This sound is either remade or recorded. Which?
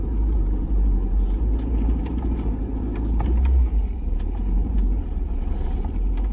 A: remade